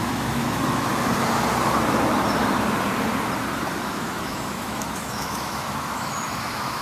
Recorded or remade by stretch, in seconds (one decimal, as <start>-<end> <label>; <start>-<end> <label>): 0.0-0.9 remade; 0.9-3.7 recorded; 3.7-6.8 remade